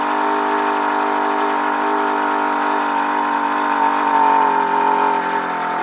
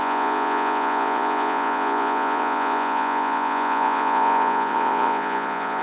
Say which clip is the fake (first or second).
second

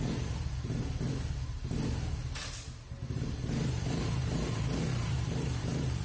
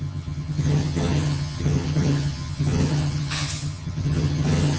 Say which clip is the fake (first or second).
second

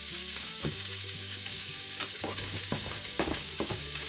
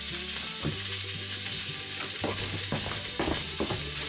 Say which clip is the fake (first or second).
first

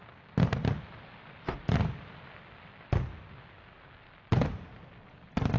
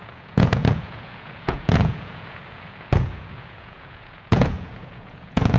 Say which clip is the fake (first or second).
second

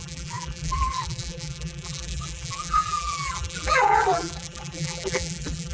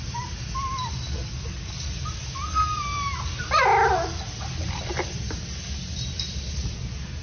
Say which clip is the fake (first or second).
first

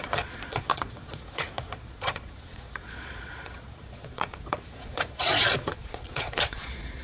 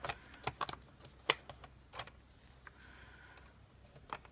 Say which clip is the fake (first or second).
first